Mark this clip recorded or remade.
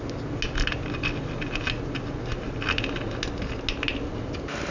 recorded